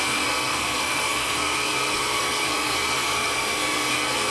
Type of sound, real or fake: fake